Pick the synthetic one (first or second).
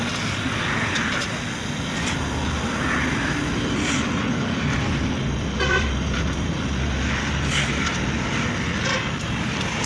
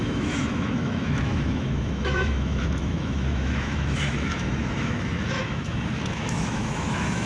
second